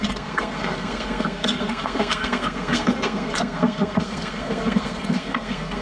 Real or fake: fake